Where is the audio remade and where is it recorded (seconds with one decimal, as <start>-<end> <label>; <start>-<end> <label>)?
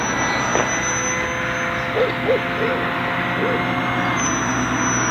0.0-5.1 recorded